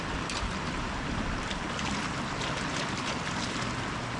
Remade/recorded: recorded